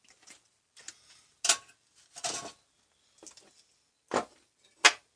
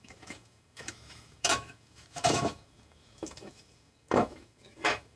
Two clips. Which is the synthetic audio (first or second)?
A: second